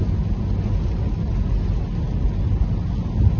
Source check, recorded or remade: recorded